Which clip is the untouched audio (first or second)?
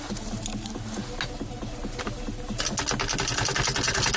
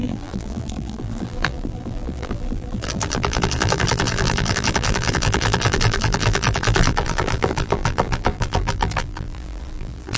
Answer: first